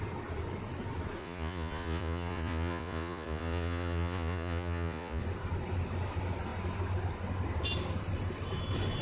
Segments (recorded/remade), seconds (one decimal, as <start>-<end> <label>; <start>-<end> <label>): 0.0-1.2 recorded; 1.2-5.2 remade; 5.2-9.0 recorded